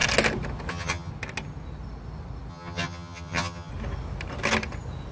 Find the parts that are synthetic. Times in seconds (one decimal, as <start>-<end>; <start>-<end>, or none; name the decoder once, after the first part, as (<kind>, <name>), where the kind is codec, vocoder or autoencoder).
0.7-1.1 (vocoder, HiFi-GAN); 2.5-3.7